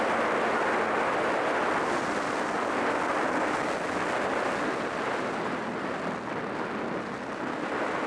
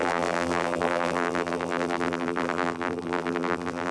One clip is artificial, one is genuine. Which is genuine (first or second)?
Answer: first